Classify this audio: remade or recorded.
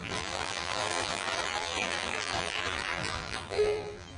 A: remade